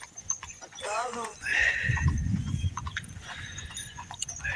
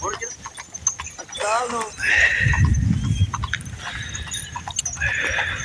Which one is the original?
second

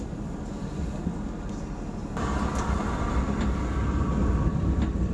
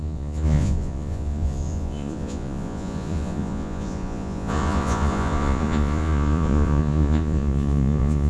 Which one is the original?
first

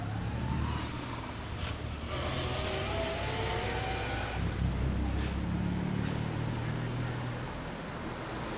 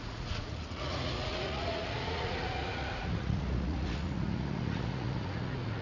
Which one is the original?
first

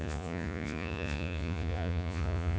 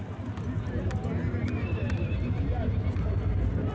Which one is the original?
second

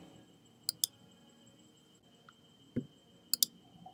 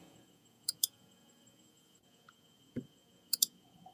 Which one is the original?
first